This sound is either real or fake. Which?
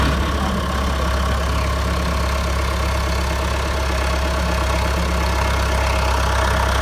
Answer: real